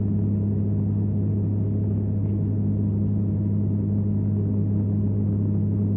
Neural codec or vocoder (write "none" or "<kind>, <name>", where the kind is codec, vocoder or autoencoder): none